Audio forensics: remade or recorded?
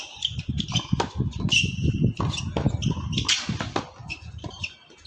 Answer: recorded